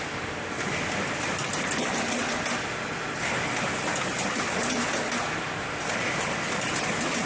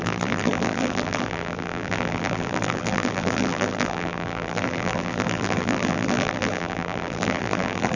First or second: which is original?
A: first